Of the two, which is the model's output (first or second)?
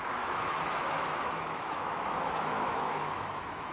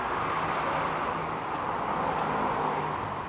first